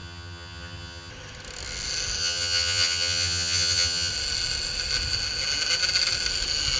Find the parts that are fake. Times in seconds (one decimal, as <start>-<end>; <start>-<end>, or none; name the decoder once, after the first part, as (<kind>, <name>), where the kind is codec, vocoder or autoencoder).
0.0-1.1 (vocoder, HiFi-GAN); 2.2-4.1